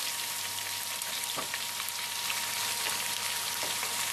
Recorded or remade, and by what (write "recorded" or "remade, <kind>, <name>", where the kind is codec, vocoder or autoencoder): remade, vocoder, BigVGAN v2